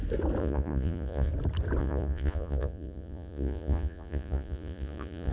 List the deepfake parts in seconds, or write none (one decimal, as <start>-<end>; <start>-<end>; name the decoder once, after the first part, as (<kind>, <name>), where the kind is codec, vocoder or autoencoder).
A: 0.4-1.3 (vocoder, Vocos); 1.8-5.3